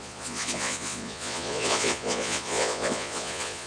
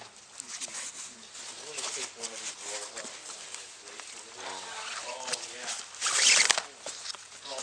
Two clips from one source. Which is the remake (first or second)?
first